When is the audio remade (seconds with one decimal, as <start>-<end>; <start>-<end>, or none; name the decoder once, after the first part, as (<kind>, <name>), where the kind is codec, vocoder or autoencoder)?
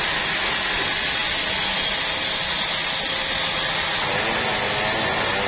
none